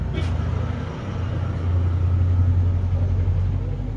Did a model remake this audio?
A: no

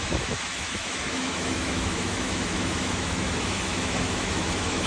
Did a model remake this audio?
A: yes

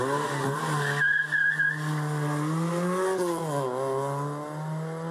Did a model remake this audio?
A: no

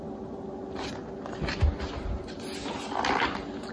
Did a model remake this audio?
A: no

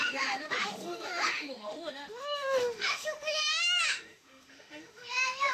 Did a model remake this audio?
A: yes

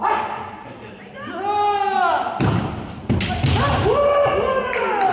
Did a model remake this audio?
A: no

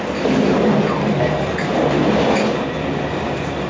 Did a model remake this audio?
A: no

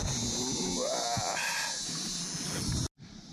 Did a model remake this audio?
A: no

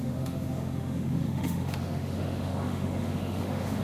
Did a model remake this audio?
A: yes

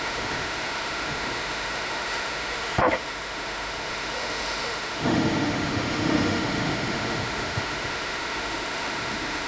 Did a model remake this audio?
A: yes